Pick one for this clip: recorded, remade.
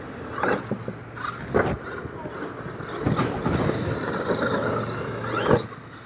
recorded